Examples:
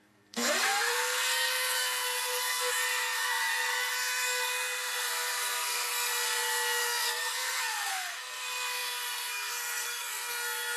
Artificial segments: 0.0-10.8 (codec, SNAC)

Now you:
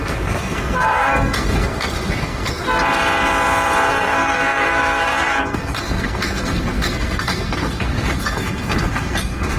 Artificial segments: 0.0-2.6 (codec, SNAC); 3.9-9.6

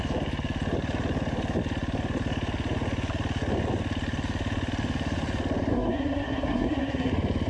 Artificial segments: 5.7-7.1 (codec, SNAC)

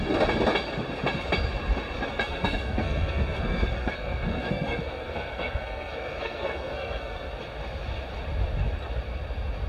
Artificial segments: 2.1-7.3 (codec, SNAC)